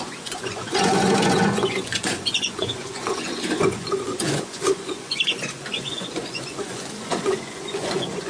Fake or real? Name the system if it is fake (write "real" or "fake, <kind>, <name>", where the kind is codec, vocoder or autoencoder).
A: fake, vocoder, Vocos